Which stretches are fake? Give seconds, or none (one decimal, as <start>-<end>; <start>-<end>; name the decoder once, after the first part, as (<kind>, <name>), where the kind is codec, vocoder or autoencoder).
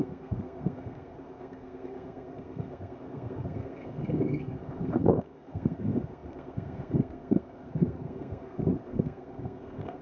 0.0-10.0 (codec, SNAC)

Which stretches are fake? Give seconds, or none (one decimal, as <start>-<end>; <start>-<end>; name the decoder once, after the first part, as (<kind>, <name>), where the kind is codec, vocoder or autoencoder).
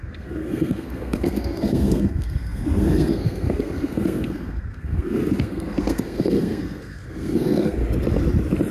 0.0-7.8 (codec, SNAC)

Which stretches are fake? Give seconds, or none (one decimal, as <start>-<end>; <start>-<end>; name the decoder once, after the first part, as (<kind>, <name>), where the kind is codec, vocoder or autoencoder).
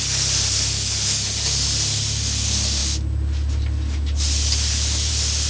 none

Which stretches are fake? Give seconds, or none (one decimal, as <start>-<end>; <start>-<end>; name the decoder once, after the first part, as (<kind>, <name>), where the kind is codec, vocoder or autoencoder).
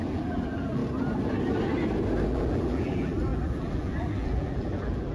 0.0-0.8 (vocoder, BigVGAN v2); 2.3-5.1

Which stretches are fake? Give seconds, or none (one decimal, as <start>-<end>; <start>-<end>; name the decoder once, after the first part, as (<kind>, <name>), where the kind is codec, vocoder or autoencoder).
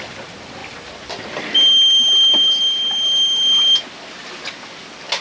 none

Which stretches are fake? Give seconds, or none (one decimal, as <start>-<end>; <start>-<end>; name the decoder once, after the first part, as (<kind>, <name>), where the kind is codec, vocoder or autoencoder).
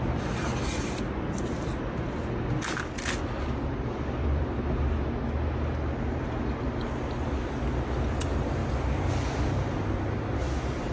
3.2-5.0 (vocoder, BigVGAN v2); 8.6-10.1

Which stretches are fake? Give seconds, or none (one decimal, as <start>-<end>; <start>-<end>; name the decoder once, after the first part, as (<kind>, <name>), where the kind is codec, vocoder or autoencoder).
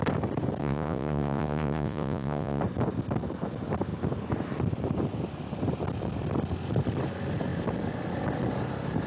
0.6-2.6 (vocoder, Vocos)